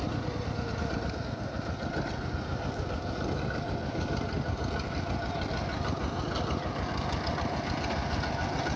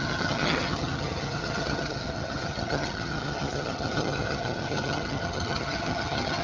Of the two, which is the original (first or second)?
first